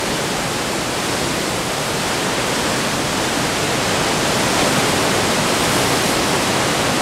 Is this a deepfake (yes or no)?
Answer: no